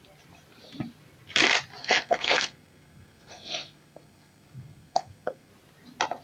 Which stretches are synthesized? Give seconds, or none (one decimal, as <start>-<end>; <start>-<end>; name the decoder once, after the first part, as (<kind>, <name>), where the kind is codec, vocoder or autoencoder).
1.8-5.5 (codec, SNAC)